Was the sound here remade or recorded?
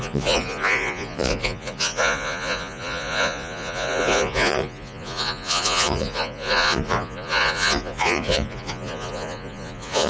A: remade